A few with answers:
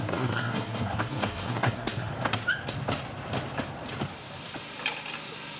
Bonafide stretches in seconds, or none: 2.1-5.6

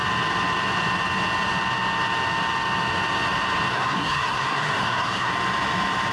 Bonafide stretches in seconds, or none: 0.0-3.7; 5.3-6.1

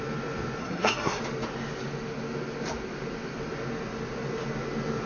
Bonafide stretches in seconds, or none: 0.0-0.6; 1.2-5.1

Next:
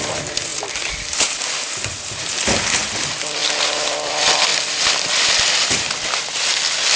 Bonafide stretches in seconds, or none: 0.0-7.0

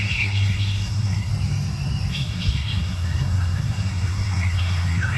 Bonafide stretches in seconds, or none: 1.3-2.1

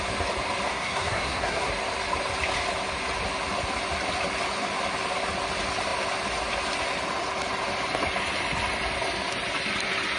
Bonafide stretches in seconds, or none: 0.0-0.7; 1.7-10.2